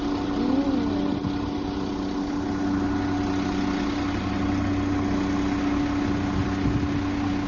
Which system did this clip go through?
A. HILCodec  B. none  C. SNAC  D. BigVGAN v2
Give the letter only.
B